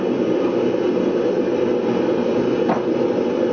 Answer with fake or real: real